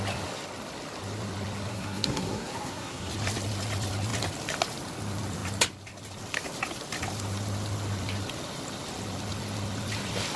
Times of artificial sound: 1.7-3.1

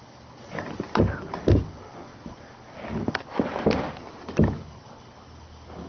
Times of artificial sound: none

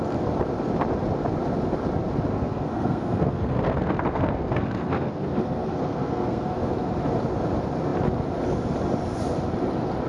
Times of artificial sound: 2.3-6.7

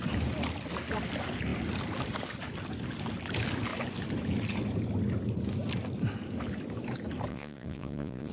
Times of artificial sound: 7.3-8.3

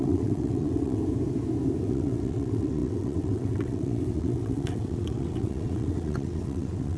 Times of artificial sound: 0.0-1.0; 1.8-7.0

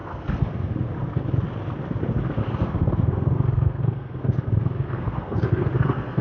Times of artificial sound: 0.0-0.7; 2.4-6.2

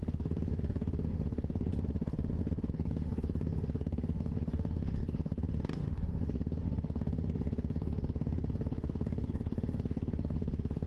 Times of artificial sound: 0.0-1.7; 2.7-10.9